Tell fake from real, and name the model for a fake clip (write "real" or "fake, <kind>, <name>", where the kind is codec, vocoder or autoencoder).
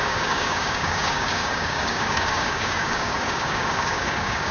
fake, codec, DAC